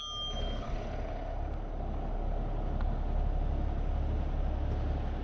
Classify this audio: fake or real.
real